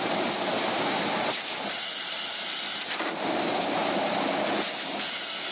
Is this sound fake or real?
real